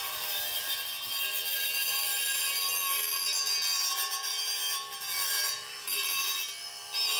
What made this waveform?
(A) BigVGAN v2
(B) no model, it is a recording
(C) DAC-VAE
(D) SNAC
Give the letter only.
B